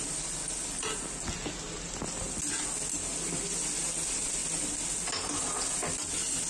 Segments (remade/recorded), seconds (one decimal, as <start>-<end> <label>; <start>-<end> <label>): 0.0-6.5 recorded